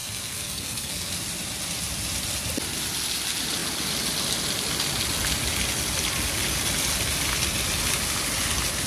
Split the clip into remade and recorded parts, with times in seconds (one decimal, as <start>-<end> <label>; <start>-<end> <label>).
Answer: 0.0-1.1 remade; 1.1-8.9 recorded